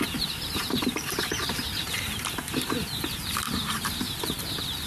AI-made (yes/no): yes